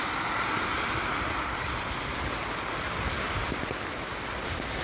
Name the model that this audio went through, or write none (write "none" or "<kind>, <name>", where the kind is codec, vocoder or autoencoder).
none